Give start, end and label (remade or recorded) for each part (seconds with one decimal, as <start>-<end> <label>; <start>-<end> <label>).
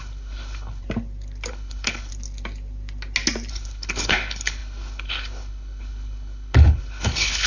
0.0-0.8 remade; 0.8-1.5 recorded; 1.5-2.1 remade; 2.1-3.5 recorded; 3.5-7.5 remade